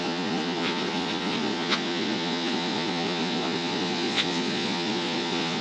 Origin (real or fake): fake